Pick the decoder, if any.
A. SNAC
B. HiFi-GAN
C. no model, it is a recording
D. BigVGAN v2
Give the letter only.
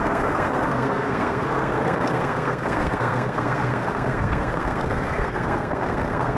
A